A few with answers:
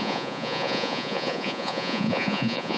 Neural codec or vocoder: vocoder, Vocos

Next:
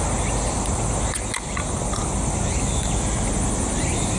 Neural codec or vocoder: none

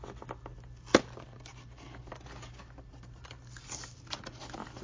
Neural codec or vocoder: none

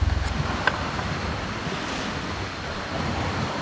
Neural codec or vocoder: none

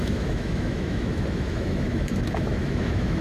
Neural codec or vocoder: autoencoder, DAC-VAE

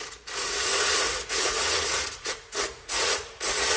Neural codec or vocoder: vocoder, Vocos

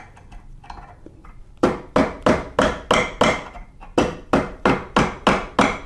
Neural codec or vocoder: none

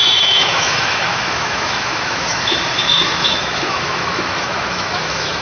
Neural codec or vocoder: autoencoder, DAC-VAE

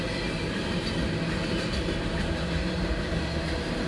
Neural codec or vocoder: none